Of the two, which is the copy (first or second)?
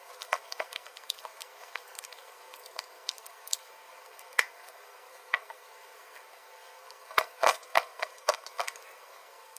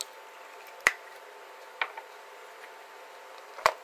first